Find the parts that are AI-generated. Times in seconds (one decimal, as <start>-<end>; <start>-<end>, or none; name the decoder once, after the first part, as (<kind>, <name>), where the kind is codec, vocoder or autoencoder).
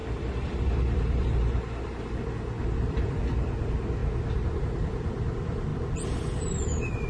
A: 0.0-4.0 (vocoder, BigVGAN v2); 4.6-5.7; 6.6-7.1